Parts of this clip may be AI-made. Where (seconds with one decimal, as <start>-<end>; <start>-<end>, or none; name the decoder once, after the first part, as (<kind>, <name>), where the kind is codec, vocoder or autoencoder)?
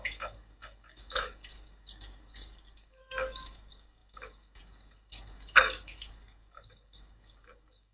0.0-7.9 (codec, DAC)